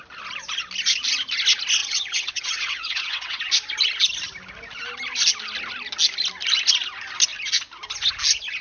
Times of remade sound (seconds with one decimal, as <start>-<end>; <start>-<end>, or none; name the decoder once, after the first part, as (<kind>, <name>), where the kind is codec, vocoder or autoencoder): 1.8-3.4 (vocoder, WaveNeXt)